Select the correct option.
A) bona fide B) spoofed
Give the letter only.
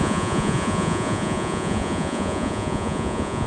B